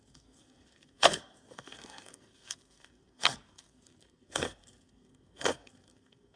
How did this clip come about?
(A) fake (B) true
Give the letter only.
A